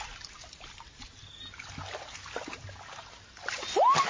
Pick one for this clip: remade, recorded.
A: recorded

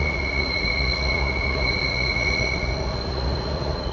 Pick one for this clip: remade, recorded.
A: remade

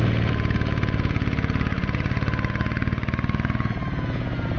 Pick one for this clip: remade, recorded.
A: remade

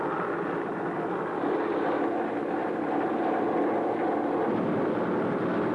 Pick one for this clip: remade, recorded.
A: recorded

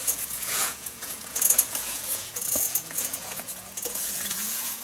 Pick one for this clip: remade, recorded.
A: remade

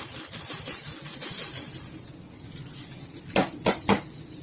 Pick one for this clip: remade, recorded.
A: recorded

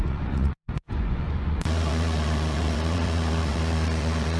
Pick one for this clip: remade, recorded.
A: remade